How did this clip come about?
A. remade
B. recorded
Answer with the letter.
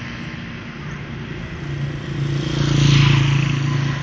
B